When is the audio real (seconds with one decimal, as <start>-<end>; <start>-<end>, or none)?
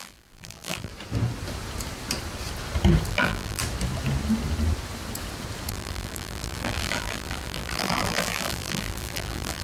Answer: 0.9-3.1; 3.6-5.7